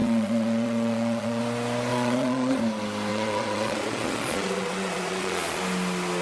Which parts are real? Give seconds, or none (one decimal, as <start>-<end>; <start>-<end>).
1.4-1.9; 2.6-3.1; 5.6-6.2